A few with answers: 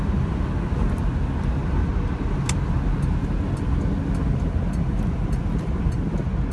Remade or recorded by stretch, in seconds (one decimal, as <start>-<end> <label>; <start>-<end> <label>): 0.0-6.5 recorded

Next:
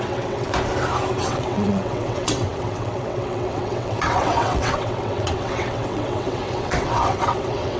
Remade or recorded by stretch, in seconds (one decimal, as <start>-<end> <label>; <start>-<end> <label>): 0.0-0.5 remade; 0.5-1.2 recorded; 1.2-7.8 remade

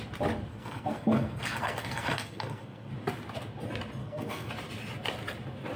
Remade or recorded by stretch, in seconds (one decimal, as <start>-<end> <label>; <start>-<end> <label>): 0.0-0.5 recorded; 0.5-2.9 remade; 2.9-4.0 recorded; 4.0-4.5 remade; 4.5-5.8 recorded

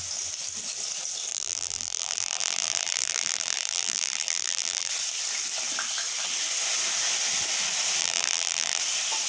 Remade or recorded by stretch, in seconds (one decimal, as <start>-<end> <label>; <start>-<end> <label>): 0.0-1.3 recorded; 1.3-4.9 remade; 4.9-8.0 recorded; 8.0-8.8 remade; 8.8-9.3 recorded